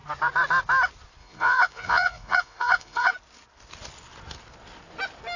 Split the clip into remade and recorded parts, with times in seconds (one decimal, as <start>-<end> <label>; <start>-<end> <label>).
0.0-1.2 recorded; 1.2-3.1 remade; 3.1-5.4 recorded